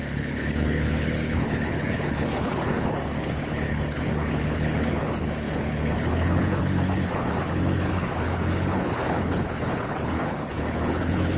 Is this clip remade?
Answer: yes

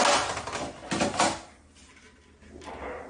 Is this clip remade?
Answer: no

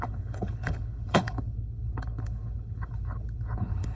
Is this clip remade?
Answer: yes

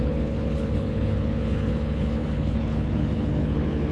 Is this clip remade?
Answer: yes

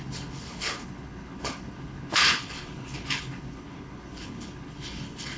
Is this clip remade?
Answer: yes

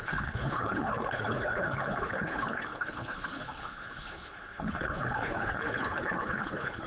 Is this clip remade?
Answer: yes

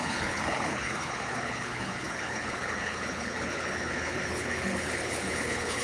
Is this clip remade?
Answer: yes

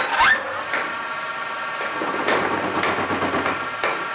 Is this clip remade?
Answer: no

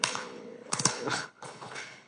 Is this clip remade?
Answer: yes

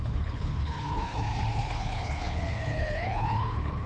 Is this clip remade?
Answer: yes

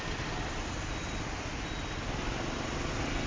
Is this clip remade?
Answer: no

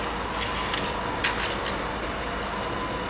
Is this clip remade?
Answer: no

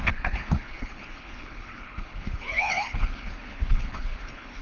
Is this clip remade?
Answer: yes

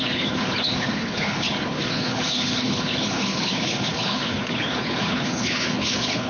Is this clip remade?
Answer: yes